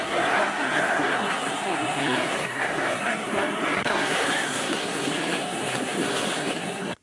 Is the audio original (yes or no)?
no